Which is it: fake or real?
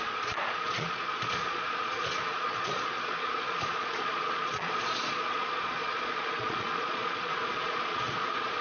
fake